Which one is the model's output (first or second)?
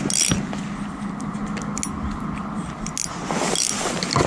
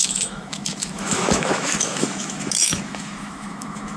second